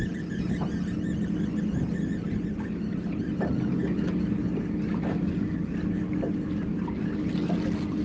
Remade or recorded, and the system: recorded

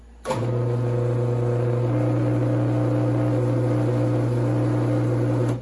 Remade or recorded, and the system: recorded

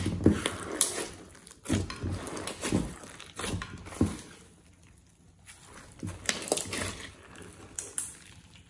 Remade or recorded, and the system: recorded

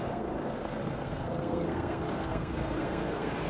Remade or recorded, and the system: remade, codec, SNAC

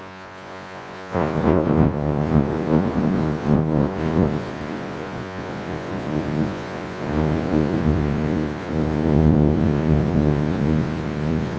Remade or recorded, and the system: remade, vocoder, Vocos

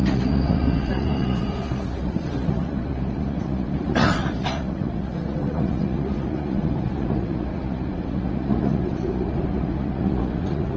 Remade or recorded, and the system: remade, vocoder, Vocos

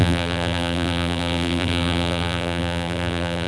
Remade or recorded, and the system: remade, vocoder, BigVGAN v2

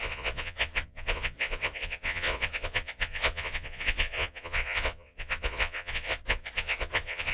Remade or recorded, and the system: remade, vocoder, Vocos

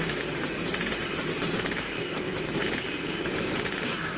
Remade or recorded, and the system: remade, vocoder, BigVGAN v2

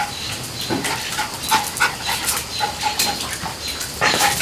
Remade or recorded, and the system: recorded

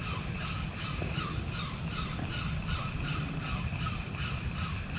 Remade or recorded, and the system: recorded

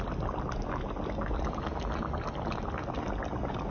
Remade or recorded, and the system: recorded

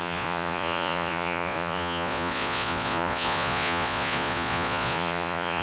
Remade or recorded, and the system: remade, vocoder, Vocos